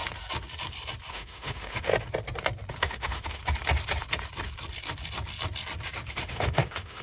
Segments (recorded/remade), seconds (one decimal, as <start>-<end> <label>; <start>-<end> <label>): 0.0-1.1 recorded; 1.1-1.9 remade; 1.9-2.8 recorded; 2.8-3.4 remade; 3.4-6.1 recorded; 6.1-7.0 remade